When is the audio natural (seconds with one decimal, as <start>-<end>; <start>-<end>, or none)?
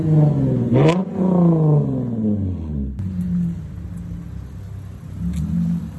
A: 0.0-6.0